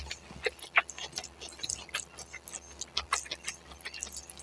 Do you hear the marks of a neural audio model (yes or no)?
no